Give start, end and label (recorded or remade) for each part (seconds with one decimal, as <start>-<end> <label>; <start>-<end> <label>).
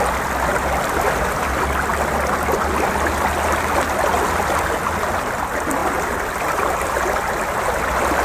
0.0-5.8 recorded; 5.8-7.0 remade; 7.0-8.2 recorded